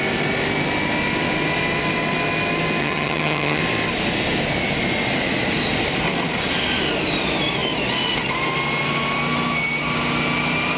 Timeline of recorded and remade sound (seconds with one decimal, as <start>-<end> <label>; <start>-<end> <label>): 0.0-2.8 recorded; 2.8-3.6 remade; 3.6-10.8 recorded